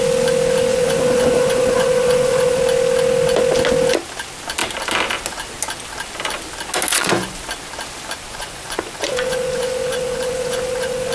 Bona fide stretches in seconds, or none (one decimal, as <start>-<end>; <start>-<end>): 0.0-0.7; 2.6-6.9; 7.4-8.3